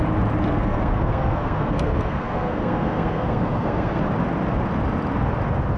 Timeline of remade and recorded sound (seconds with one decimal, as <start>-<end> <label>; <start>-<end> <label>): 0.0-0.5 recorded; 0.5-4.0 remade; 4.0-5.8 recorded